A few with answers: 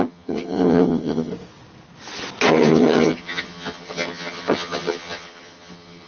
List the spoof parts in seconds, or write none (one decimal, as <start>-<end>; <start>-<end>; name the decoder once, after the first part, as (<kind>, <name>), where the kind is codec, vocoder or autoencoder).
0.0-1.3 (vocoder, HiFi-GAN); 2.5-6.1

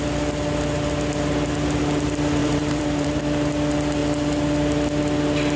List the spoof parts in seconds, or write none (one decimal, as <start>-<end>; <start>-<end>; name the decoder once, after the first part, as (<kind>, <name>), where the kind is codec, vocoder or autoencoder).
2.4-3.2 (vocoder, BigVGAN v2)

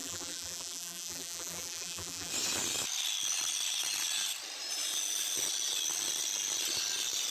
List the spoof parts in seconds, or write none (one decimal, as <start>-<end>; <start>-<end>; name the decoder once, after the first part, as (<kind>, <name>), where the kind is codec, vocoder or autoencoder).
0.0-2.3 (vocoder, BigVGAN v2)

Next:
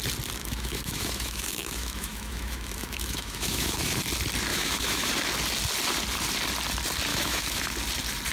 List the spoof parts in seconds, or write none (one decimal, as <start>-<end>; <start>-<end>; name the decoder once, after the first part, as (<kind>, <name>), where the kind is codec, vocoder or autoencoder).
0.4-4.0 (autoencoder, DAC-VAE); 4.5-5.1; 7.1-7.7

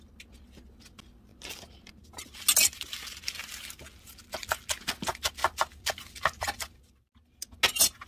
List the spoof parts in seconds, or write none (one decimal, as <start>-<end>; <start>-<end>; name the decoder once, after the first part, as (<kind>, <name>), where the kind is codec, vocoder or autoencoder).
none